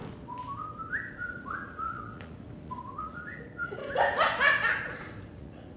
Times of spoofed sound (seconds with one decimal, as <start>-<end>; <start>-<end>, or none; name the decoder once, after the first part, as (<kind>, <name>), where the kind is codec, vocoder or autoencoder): 1.1-3.8 (vocoder, Vocos); 4.7-5.8